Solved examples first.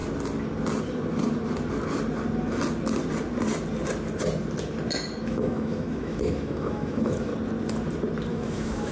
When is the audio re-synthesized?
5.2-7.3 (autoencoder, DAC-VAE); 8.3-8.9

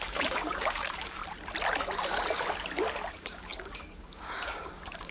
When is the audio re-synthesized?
0.0-1.2 (codec, DAC); 3.1-5.1

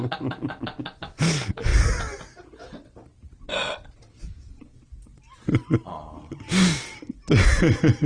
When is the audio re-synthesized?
none

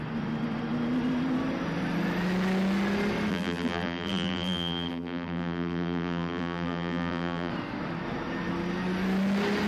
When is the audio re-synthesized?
3.3-7.5 (vocoder, BigVGAN v2)

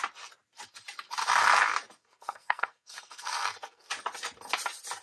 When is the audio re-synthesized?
2.0-3.9 (codec, SNAC)

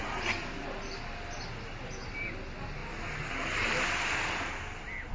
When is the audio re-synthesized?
none

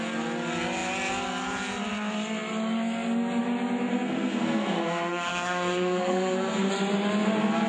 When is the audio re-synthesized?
3.9-6.7 (codec, SNAC)